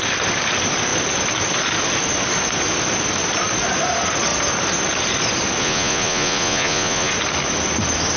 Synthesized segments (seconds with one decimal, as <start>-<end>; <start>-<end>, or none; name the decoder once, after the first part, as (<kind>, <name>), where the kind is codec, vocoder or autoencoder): 5.6-7.1 (vocoder, Vocos)